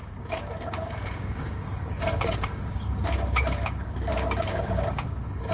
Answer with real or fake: fake